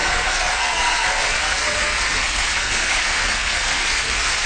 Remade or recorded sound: remade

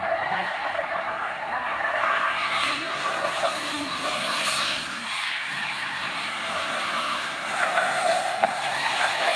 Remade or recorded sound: remade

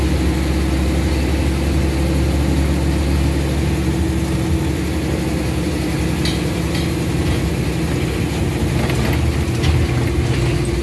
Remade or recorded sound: recorded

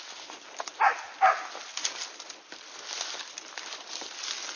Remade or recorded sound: recorded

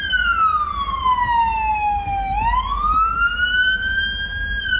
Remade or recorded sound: recorded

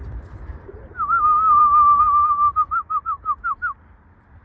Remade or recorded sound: remade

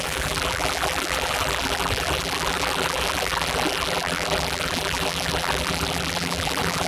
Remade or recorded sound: remade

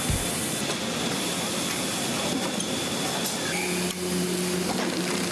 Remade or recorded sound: recorded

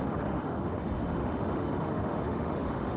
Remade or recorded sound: remade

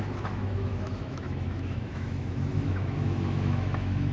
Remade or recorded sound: remade